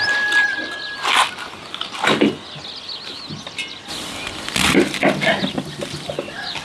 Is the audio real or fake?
real